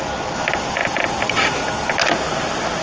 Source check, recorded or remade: recorded